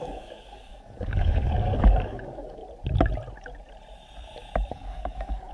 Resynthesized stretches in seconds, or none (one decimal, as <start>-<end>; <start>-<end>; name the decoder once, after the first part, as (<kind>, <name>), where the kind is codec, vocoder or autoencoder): 0.0-2.6 (codec, DAC); 4.7-5.5